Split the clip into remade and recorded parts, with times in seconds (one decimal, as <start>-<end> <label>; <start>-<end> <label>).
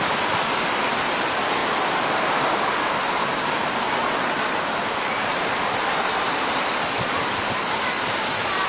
0.0-1.6 remade; 1.6-2.9 recorded; 2.9-8.7 remade